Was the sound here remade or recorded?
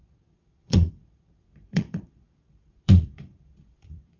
remade